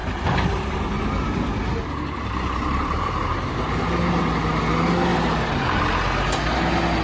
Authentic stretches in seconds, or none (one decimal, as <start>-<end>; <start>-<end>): 3.9-5.1; 5.8-7.0